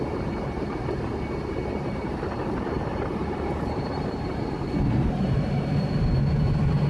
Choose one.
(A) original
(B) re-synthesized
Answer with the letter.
B